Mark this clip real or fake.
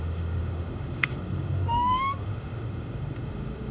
fake